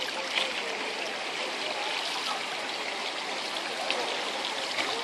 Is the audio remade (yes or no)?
no